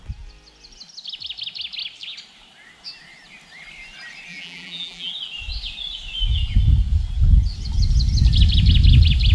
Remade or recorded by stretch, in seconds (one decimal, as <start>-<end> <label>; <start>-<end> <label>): 0.0-4.3 recorded; 4.3-5.1 remade; 5.1-9.3 recorded